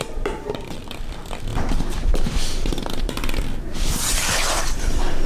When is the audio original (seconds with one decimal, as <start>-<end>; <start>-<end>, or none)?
none